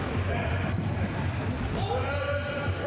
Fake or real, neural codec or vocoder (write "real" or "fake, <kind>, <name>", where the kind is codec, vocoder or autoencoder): real